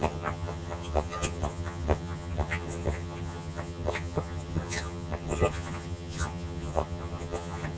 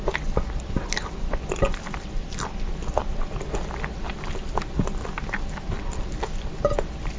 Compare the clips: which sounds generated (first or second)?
first